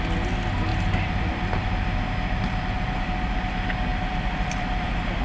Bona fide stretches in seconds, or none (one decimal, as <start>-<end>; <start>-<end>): 0.0-0.7; 3.0-3.9